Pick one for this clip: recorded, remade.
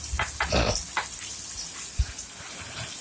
recorded